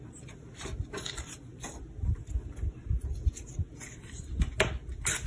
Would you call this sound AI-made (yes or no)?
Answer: no